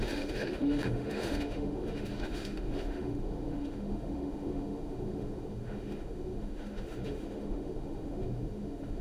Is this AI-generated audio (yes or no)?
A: yes